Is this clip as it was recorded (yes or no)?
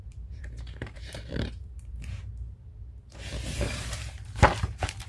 no